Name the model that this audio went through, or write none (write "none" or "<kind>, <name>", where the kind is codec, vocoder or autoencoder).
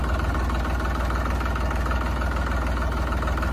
none